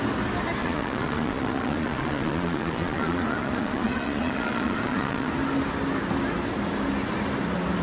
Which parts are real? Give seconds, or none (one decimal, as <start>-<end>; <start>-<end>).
0.0-0.6; 5.3-7.8